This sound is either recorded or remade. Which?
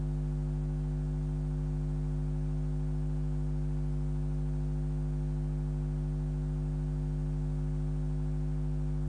recorded